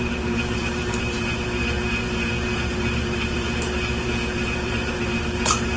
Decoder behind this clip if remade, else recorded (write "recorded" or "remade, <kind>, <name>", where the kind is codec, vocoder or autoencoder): remade, vocoder, BigVGAN v2